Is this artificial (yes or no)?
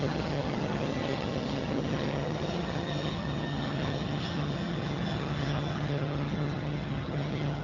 yes